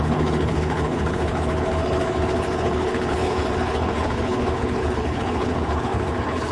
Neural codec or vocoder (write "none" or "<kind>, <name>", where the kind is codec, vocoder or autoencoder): codec, HILCodec